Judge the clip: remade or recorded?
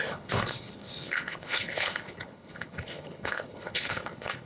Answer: remade